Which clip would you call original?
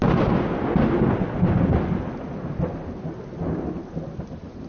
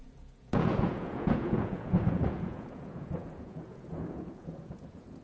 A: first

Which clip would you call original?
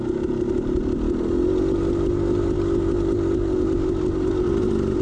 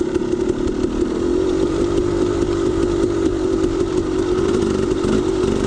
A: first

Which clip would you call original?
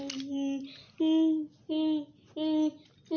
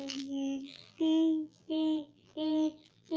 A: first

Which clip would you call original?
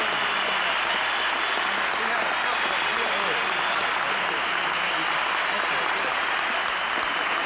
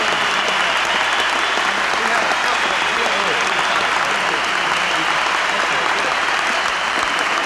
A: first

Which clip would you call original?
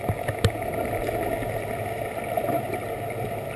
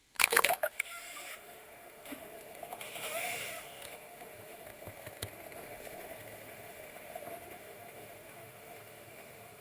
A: first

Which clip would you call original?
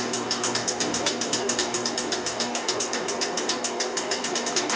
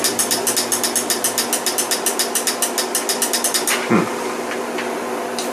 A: second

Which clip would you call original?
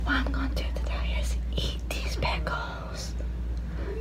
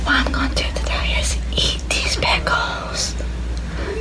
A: first